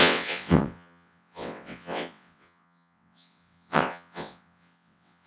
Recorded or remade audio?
remade